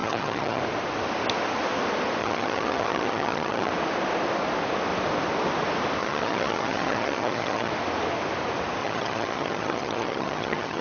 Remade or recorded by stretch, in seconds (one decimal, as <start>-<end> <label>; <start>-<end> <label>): 0.0-0.6 remade; 0.6-2.2 recorded; 2.2-3.7 remade; 3.7-6.0 recorded; 6.0-7.7 remade; 7.7-8.8 recorded; 8.8-10.8 remade